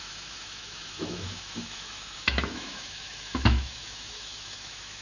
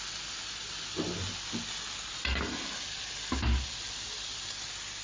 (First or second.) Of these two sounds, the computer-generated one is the first